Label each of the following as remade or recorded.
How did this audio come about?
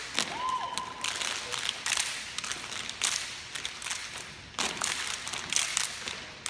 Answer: recorded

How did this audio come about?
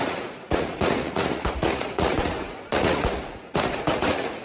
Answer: remade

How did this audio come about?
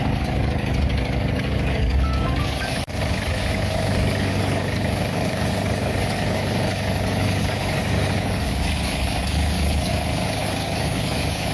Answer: remade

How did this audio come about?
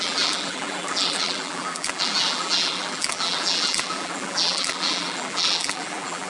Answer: remade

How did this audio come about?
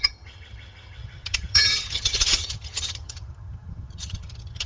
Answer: remade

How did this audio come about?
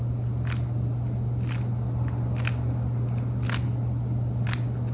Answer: recorded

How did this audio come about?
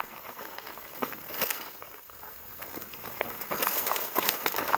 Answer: remade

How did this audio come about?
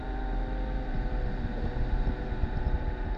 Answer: remade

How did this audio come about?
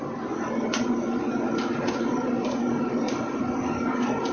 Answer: recorded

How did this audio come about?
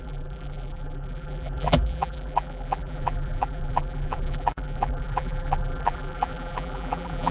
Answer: remade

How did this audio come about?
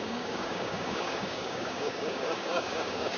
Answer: remade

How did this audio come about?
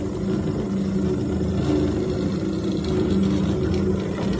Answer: recorded